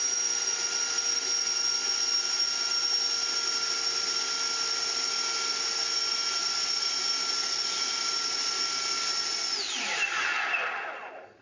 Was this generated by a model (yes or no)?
no